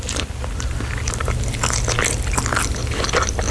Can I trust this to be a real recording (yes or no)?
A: yes